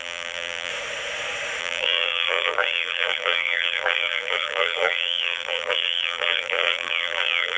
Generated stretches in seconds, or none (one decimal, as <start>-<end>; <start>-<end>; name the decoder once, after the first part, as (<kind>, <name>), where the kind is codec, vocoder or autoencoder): 0.0-0.7 (vocoder, BigVGAN v2); 1.6-7.6